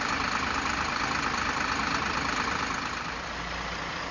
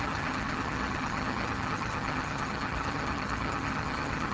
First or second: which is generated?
second